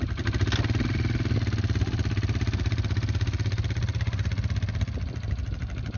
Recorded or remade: recorded